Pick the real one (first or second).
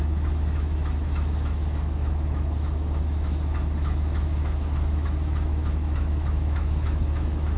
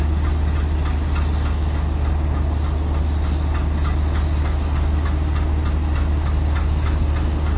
second